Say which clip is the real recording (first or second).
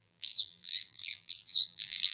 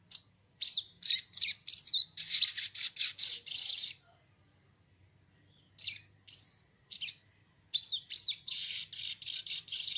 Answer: second